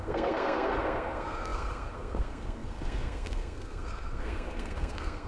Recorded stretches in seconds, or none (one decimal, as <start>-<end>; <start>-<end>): none

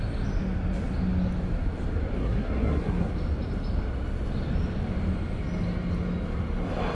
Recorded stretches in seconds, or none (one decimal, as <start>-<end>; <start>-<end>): 0.0-2.2; 3.1-6.9

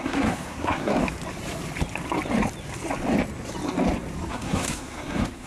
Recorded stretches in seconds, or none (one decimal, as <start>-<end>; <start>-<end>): 1.0-4.3

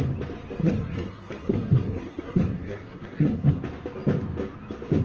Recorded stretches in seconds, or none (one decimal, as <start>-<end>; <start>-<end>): 0.0-0.6; 3.6-5.0

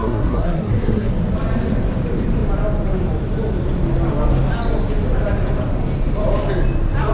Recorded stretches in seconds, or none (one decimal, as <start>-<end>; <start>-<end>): 1.1-7.1

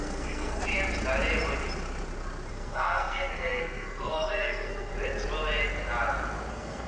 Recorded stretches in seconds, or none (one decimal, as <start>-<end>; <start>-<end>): 0.6-2.5; 4.9-6.5